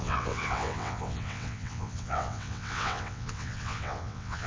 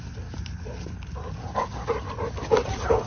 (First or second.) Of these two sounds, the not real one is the first